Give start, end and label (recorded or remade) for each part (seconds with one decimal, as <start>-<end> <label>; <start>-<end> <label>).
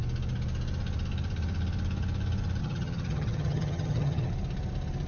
0.0-2.6 recorded; 2.6-4.3 remade; 4.3-5.1 recorded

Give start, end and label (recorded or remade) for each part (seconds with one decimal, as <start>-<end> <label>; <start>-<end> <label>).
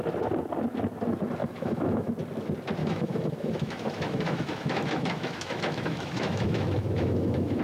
0.0-1.4 recorded; 1.4-2.1 remade; 2.1-2.8 recorded; 2.8-7.6 remade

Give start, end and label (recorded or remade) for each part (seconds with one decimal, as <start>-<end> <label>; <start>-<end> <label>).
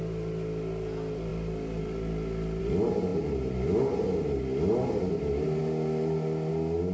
0.0-6.9 recorded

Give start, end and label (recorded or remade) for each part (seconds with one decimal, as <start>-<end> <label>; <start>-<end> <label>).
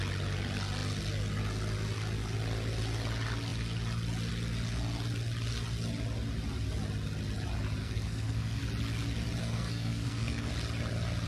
0.0-7.8 recorded; 7.8-8.6 remade; 8.6-9.4 recorded; 9.4-10.5 remade; 10.5-11.3 recorded